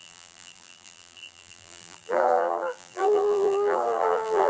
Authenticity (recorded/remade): remade